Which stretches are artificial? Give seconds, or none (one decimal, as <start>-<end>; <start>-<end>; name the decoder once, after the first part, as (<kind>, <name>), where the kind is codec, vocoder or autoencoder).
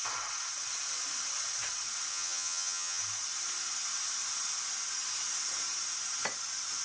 2.1-3.0 (vocoder, HiFi-GAN)